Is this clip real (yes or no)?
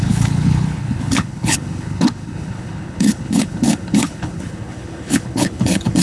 no